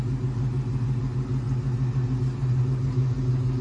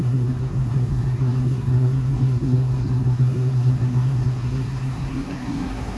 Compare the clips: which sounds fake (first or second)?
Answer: second